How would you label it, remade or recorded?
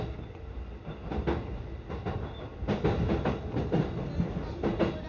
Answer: recorded